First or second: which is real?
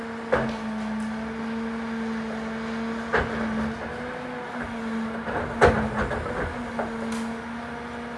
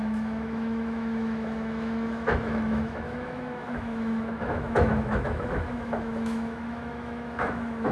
first